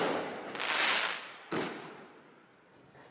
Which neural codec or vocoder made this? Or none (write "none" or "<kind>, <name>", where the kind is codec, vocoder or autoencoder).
none